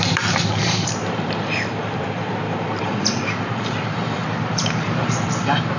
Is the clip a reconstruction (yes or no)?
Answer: yes